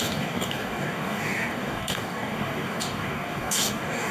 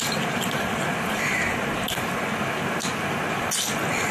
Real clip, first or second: second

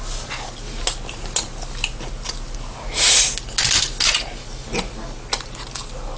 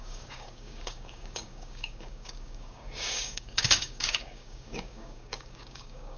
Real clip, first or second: first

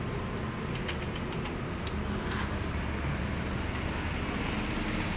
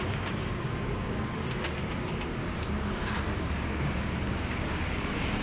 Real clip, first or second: first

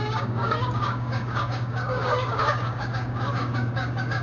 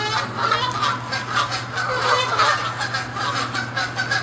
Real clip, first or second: second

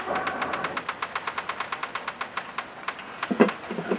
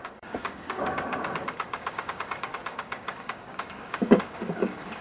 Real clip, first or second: first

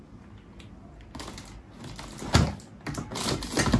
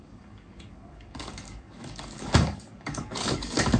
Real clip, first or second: first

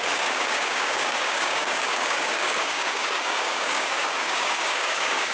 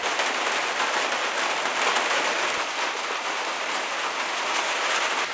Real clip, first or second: second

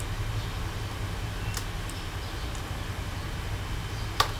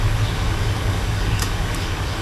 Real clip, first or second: first